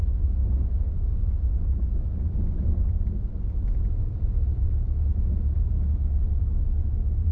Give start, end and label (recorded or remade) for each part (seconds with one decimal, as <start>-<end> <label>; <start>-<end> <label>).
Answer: 0.0-3.3 recorded; 3.3-4.7 remade; 4.7-7.3 recorded

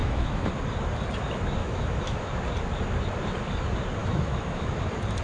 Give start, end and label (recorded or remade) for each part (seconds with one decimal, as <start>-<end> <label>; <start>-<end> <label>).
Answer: 0.0-0.5 remade; 0.5-1.6 recorded; 1.6-2.3 remade; 2.3-4.0 recorded; 4.0-4.8 remade; 4.8-5.2 recorded

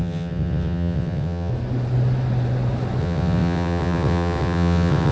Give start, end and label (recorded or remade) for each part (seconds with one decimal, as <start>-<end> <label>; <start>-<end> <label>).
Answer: 0.0-1.5 remade; 1.5-3.0 recorded; 3.0-5.1 remade

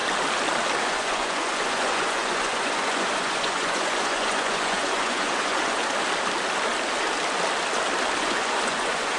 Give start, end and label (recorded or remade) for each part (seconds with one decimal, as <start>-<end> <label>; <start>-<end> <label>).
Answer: 0.0-0.8 recorded; 0.8-5.8 remade; 5.8-8.2 recorded; 8.2-9.2 remade